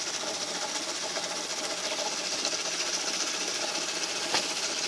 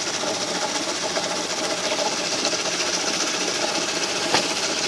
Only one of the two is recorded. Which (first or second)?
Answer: first